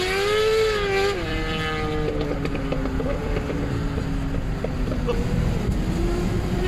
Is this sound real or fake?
real